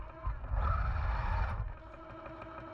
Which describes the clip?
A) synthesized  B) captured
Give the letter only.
B